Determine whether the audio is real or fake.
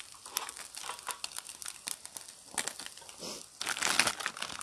real